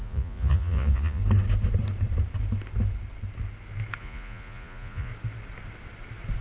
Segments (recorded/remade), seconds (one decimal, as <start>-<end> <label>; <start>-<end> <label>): 0.0-1.2 remade; 1.2-4.0 recorded; 4.0-5.1 remade; 5.1-6.4 recorded